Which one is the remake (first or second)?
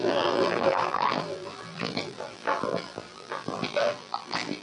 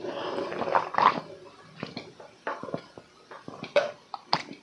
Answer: first